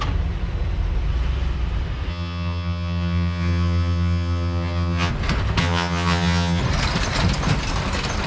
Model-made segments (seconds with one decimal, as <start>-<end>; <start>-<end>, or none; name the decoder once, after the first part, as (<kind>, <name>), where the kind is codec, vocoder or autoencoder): 2.1-5.1 (vocoder, HiFi-GAN); 5.6-6.6